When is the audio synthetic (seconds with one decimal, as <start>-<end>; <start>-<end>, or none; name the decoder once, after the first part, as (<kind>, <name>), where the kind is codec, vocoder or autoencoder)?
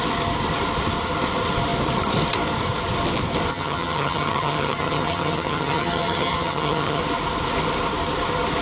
3.5-7.0 (vocoder, HiFi-GAN)